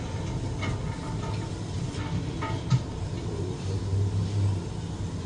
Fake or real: real